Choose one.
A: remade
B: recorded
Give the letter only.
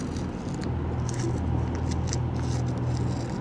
B